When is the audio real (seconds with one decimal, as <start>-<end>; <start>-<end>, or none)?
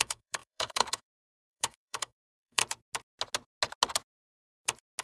2.6-5.0